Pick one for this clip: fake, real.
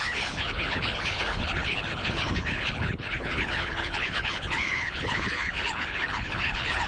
fake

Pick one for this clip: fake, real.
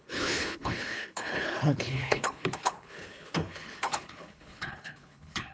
fake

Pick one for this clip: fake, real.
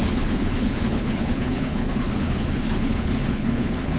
fake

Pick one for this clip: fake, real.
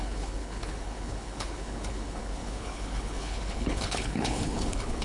fake